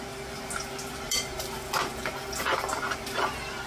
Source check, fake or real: real